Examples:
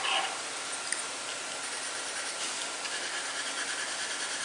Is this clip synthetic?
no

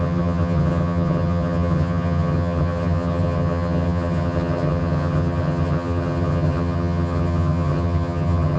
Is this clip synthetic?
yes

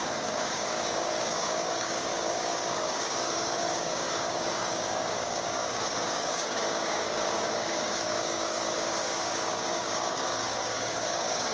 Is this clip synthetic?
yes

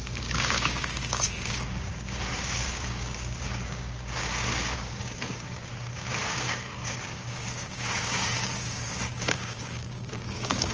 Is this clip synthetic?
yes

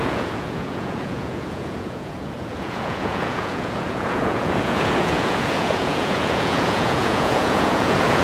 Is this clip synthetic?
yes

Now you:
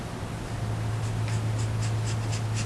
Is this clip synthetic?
no